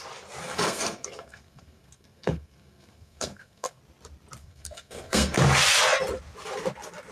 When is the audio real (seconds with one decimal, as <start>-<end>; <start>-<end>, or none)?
0.0-0.4; 3.8-4.4; 5.4-7.1